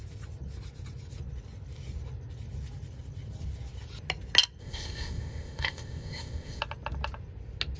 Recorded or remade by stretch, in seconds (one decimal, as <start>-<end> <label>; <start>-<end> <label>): 0.0-4.6 recorded; 4.6-6.6 remade; 6.6-7.8 recorded